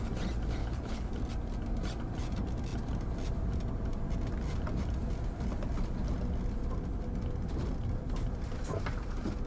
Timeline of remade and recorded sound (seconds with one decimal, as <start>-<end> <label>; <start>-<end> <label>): 0.0-0.6 recorded; 0.6-1.1 remade; 1.1-9.5 recorded